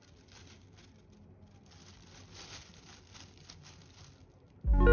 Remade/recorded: recorded